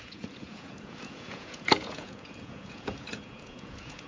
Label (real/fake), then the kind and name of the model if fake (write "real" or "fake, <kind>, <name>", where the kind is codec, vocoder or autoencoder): fake, vocoder, Vocos